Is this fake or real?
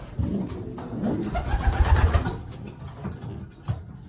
real